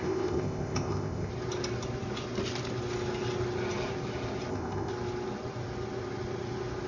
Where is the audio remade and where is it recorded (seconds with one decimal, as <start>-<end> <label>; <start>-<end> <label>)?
0.0-1.3 remade; 1.3-4.5 recorded; 4.5-4.9 remade; 4.9-6.9 recorded